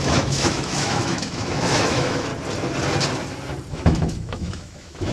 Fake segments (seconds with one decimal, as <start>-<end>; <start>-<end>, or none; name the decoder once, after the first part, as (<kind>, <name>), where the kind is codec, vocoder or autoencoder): 0.0-2.3 (autoencoder, DAC-VAE); 3.7-5.1